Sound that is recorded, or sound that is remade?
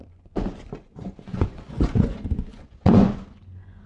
remade